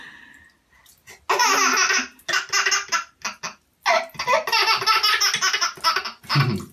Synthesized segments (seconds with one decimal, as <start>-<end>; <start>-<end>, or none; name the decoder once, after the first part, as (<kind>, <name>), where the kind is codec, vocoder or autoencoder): none